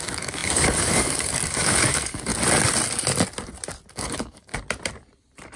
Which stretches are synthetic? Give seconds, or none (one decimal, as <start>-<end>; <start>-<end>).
0.0-2.3; 3.9-4.5